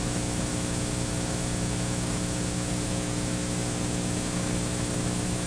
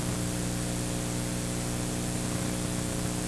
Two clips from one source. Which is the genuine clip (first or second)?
second